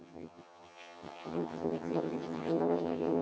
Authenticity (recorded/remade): remade